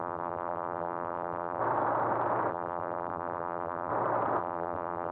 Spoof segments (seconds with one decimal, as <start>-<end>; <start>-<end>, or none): 0.0-1.6; 2.5-3.9; 4.4-5.1